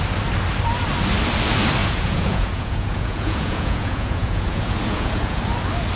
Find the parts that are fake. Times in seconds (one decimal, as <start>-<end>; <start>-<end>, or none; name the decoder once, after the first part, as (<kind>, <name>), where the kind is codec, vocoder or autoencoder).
1.8-5.4 (vocoder, Vocos)